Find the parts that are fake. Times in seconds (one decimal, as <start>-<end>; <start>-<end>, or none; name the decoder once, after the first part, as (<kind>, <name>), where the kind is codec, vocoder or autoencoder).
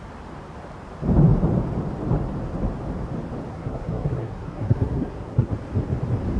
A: 3.5-5.5 (codec, SNAC)